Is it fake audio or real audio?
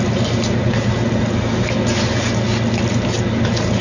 real